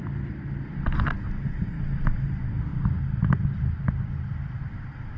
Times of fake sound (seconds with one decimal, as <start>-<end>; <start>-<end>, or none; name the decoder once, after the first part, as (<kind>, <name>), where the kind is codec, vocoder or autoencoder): none